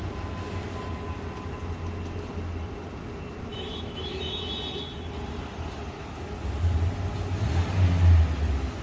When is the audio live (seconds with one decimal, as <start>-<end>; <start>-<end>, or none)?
0.0-3.5; 4.4-8.8